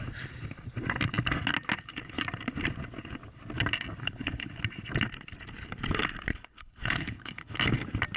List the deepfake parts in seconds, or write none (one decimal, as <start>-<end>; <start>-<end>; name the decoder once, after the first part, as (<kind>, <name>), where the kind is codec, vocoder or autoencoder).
4.0-4.5 (codec, HILCodec); 6.3-7.6